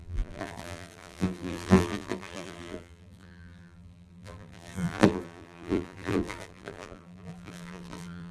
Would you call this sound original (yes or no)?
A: no